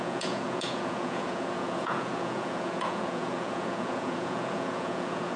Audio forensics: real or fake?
fake